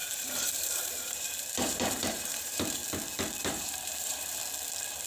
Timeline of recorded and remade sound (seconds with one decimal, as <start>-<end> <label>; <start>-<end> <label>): 0.0-2.8 remade; 2.8-3.4 recorded; 3.4-4.4 remade; 4.4-5.1 recorded